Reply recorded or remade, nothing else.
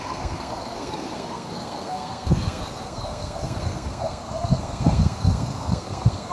remade